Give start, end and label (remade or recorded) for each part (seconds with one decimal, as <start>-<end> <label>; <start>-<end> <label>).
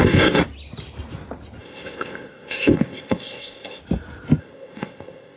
0.0-0.4 remade; 0.4-1.6 recorded; 1.6-3.8 remade; 3.8-4.4 recorded; 4.4-5.4 remade